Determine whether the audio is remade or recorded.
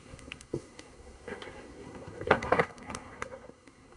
remade